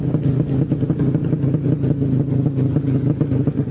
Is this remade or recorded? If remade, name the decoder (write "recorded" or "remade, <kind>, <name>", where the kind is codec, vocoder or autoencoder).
recorded